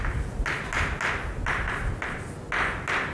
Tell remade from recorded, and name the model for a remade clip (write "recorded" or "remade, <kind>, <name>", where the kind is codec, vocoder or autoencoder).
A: recorded